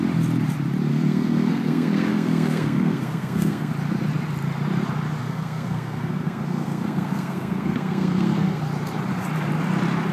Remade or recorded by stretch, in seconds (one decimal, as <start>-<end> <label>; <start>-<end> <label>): 0.0-0.9 recorded; 0.9-3.7 remade; 3.7-5.2 recorded; 5.2-8.6 remade; 8.6-10.1 recorded